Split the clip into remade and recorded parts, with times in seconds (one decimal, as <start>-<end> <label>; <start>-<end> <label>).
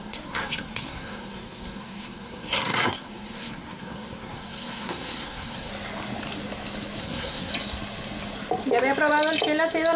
0.0-5.7 remade; 5.7-7.0 recorded; 7.0-7.5 remade; 7.5-10.0 recorded